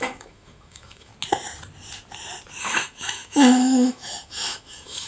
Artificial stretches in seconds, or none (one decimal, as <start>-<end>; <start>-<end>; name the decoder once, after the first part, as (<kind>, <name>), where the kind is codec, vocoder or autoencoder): 0.0-1.1 (autoencoder, DAC-VAE); 2.6-5.1